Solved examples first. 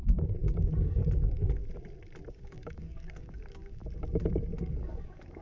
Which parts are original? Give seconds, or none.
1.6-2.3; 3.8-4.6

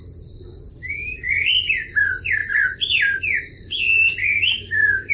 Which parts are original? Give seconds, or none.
0.0-0.7; 1.5-4.2

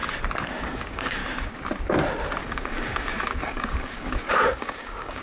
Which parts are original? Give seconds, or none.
0.0-0.6; 1.2-2.4

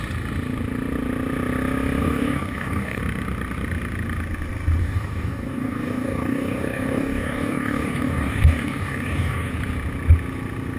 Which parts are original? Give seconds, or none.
0.0-2.0; 3.0-4.8; 9.5-10.8

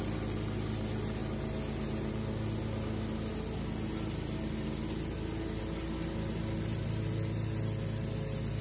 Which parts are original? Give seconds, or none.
0.0-8.6

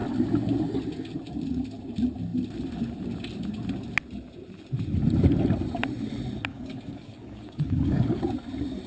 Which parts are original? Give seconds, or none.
0.0-6.5; 8.2-8.9